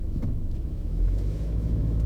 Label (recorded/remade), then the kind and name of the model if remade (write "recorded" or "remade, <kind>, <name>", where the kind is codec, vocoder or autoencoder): remade, autoencoder, DAC-VAE